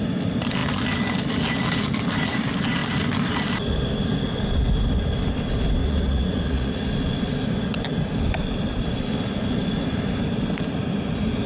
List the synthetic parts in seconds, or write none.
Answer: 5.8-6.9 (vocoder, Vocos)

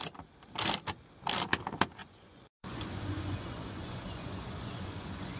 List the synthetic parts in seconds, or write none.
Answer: 2.0-5.4 (vocoder, Vocos)

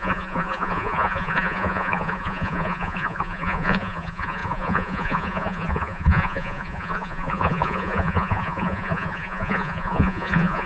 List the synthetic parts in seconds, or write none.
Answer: 0.0-10.7 (vocoder, Vocos)

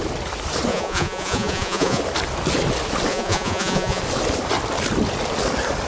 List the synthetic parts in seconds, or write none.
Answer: 0.7-2.0 (vocoder, Vocos); 3.1-4.0